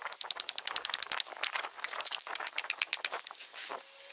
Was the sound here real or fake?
fake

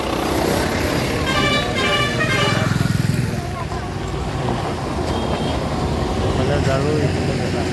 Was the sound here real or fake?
real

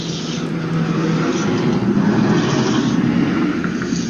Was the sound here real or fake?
real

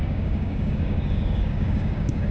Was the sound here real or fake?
fake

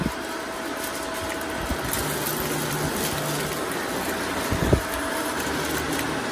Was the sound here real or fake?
real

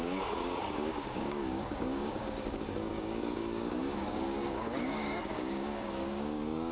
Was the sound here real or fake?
fake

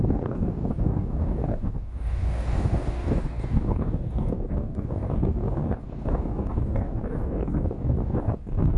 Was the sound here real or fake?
fake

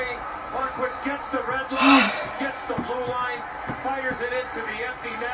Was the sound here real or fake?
real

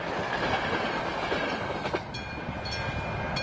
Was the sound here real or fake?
real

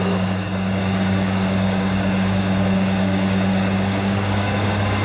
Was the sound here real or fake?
fake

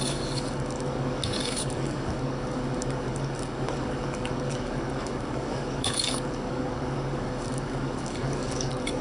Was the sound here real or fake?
fake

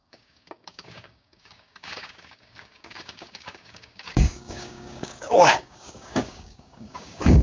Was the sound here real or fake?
fake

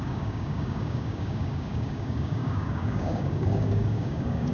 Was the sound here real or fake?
fake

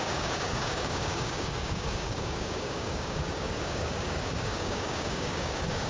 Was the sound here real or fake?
fake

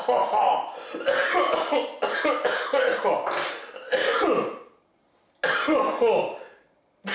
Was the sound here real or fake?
real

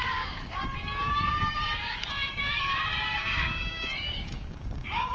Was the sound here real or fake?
fake